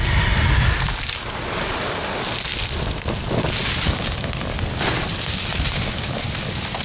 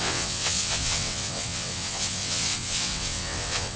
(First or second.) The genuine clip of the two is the first